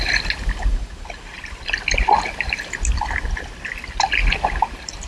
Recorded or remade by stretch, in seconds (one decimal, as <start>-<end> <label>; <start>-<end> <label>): 0.0-0.7 recorded; 0.7-1.6 remade; 1.6-5.1 recorded